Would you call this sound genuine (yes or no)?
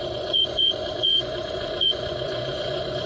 no